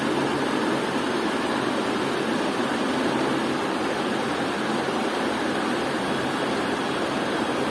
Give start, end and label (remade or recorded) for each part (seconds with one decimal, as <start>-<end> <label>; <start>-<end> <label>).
0.0-7.7 recorded